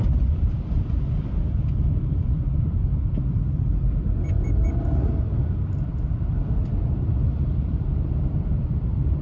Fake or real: fake